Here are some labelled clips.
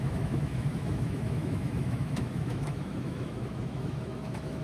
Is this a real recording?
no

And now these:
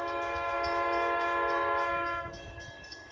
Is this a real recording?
no